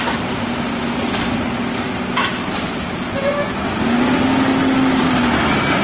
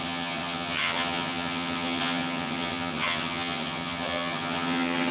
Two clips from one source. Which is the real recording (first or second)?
first